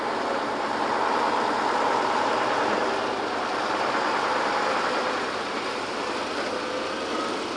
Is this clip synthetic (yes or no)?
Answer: no